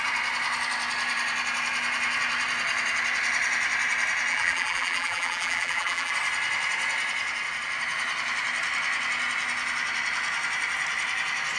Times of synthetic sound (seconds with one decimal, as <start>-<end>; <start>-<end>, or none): 4.3-6.1